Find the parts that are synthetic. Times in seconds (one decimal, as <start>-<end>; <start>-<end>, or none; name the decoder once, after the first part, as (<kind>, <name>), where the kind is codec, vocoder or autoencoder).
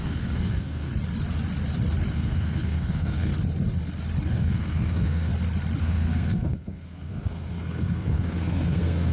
0.0-0.9 (codec, SNAC); 2.1-3.3; 4.3-5.3; 5.8-9.1